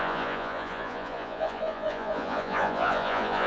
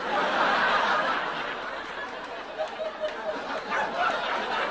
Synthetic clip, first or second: first